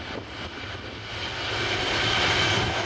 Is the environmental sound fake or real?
real